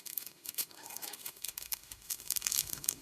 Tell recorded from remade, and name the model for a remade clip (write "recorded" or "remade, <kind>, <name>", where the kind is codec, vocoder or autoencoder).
remade, autoencoder, DAC-VAE